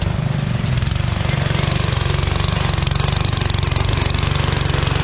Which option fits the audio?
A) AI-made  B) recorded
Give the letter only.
B